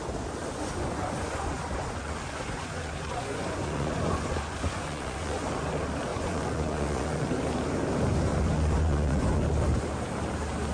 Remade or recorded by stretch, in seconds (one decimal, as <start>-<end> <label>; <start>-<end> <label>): 0.0-0.4 recorded; 0.4-5.5 remade; 5.5-6.1 recorded; 6.1-7.3 remade; 7.3-8.3 recorded; 8.3-9.4 remade; 9.4-10.7 recorded